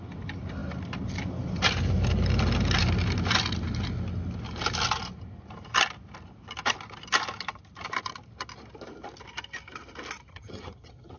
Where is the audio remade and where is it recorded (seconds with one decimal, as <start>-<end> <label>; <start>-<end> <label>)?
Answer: 0.0-10.3 recorded; 10.3-11.2 remade